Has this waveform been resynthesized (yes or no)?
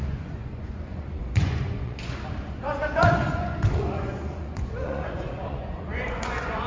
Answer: yes